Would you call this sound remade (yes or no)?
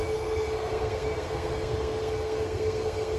yes